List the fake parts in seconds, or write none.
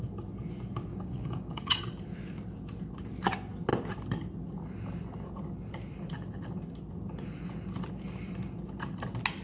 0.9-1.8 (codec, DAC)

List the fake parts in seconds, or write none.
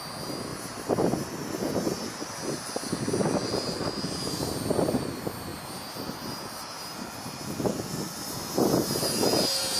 none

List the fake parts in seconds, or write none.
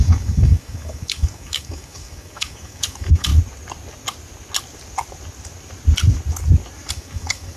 0.0-3.3 (codec, DAC); 6.9-7.6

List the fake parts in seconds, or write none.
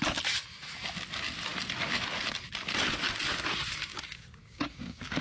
3.9-5.2 (codec, DAC)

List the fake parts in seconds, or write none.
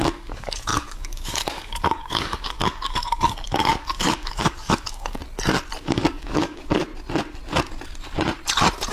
0.0-5.2 (codec, DAC); 5.8-6.8